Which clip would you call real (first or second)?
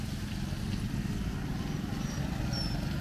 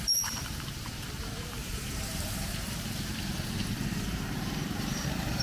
first